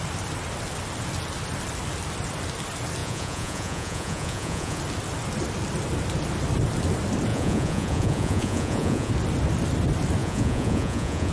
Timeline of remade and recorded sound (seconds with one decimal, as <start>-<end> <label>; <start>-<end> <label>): 0.0-3.0 recorded; 3.0-4.8 remade; 4.8-7.3 recorded; 7.3-9.1 remade; 9.1-10.2 recorded; 10.2-11.3 remade